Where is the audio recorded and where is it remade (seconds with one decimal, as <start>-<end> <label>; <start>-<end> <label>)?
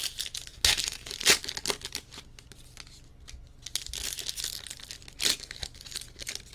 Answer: 0.0-0.5 recorded; 0.5-1.1 remade; 1.1-6.5 recorded